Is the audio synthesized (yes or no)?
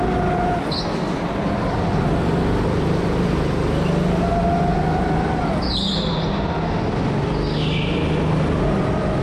no